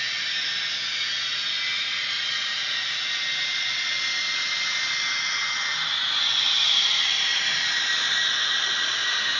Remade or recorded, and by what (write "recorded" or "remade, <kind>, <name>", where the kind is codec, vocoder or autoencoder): recorded